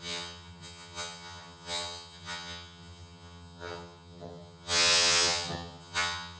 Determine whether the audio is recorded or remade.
remade